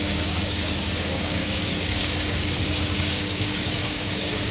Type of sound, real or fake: fake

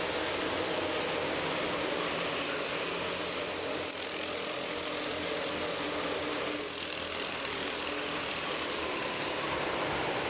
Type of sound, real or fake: real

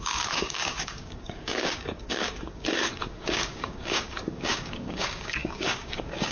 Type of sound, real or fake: fake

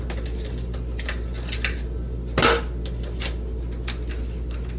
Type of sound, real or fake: real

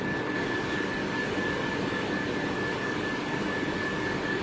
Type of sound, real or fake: fake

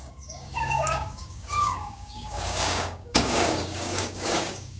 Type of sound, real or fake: fake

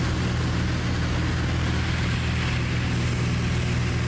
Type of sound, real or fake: real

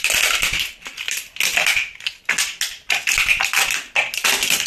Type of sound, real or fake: real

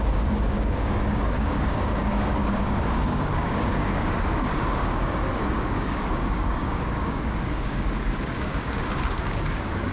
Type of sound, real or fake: fake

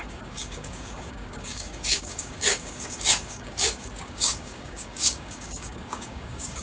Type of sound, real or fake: fake